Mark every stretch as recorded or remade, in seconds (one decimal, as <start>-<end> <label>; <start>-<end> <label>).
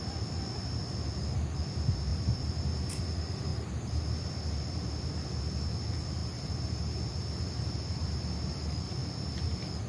0.0-2.1 recorded; 2.1-3.0 remade; 3.0-3.5 recorded; 3.5-4.0 remade; 4.0-6.2 recorded; 6.2-7.0 remade; 7.0-9.9 recorded